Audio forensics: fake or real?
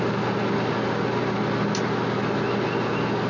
real